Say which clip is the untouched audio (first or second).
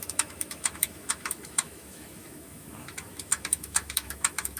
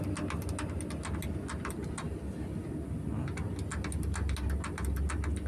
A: second